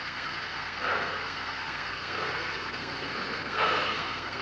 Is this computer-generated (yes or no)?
yes